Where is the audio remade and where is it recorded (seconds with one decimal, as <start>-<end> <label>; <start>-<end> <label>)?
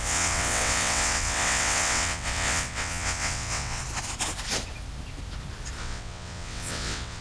0.0-3.8 remade; 3.8-5.8 recorded; 5.8-7.2 remade